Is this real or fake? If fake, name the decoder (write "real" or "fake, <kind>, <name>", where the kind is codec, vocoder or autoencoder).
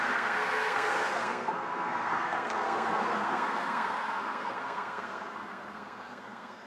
fake, codec, SNAC